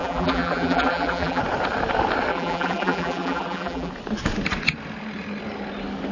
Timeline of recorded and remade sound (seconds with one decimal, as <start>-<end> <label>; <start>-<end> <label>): 0.0-1.4 remade; 1.4-2.3 recorded; 2.3-3.9 remade; 3.9-6.1 recorded